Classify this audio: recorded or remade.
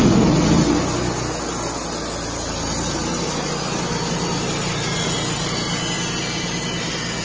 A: recorded